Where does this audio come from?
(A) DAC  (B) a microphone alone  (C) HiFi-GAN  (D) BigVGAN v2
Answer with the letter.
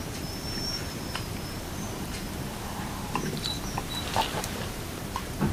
D